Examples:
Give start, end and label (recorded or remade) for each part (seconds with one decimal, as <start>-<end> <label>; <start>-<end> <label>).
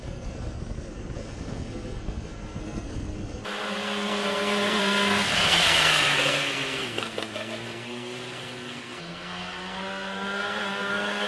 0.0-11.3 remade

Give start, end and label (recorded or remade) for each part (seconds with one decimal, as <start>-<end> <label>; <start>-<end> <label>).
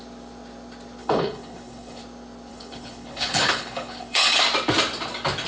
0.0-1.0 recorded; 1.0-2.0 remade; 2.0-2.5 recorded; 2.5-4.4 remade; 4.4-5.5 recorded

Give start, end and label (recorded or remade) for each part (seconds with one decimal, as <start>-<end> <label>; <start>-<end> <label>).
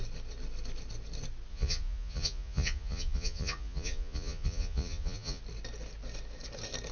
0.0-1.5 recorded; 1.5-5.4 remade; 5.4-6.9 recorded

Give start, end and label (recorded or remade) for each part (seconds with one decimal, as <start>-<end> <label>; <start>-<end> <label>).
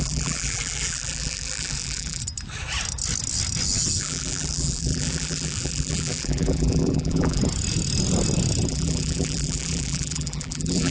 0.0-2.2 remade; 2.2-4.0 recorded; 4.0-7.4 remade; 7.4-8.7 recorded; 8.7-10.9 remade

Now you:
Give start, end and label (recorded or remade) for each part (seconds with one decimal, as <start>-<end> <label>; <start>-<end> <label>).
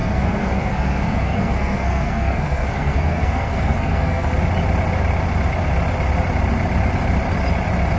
0.0-4.3 remade; 4.3-8.0 recorded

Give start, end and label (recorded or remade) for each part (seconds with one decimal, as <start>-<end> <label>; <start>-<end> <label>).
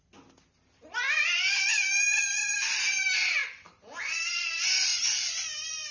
0.0-1.7 recorded; 1.7-3.0 remade; 3.0-5.9 recorded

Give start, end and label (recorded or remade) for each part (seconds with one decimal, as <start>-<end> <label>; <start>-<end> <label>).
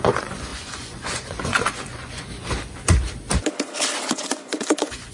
0.0-2.3 remade; 2.3-4.1 recorded; 4.1-5.1 remade